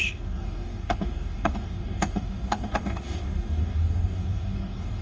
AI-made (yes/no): yes